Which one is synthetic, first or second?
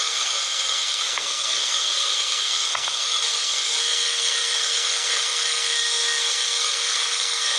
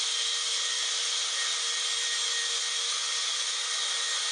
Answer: first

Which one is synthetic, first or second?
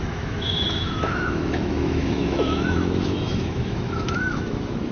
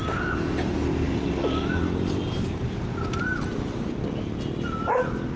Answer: first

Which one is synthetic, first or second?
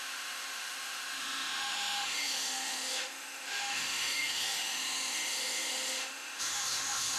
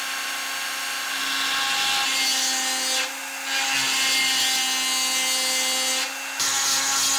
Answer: first